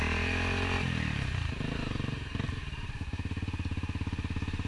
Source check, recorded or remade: recorded